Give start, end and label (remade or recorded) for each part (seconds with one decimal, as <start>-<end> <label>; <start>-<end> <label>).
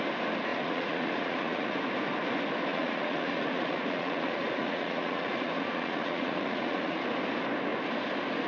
0.0-0.5 recorded; 0.5-1.8 remade; 1.8-2.7 recorded; 2.7-7.0 remade; 7.0-8.5 recorded